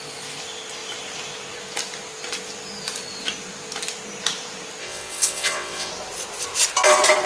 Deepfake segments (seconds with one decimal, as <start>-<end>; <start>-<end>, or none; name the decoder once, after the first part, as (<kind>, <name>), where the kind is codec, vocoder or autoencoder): 4.8-5.9 (vocoder, WaveNeXt)